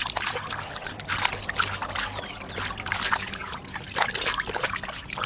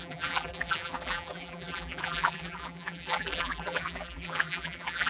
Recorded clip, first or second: first